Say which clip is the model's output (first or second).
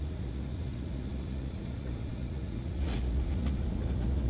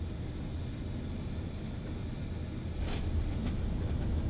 first